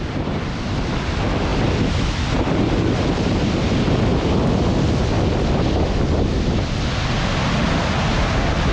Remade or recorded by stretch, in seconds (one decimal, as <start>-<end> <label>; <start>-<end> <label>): 0.0-8.7 recorded

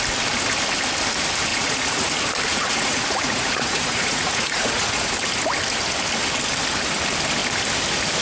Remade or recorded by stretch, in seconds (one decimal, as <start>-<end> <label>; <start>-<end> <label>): 0.0-1.5 recorded; 1.5-2.1 remade; 2.1-2.5 recorded; 2.5-5.1 remade; 5.1-8.2 recorded